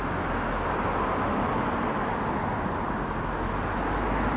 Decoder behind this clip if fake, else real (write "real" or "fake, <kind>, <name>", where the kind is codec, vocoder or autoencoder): real